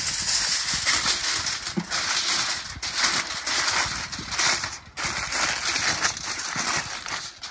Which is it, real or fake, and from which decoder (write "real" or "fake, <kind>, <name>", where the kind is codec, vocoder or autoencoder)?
real